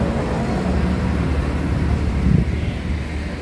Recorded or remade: recorded